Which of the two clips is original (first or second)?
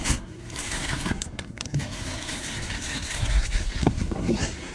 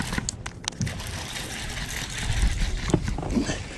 second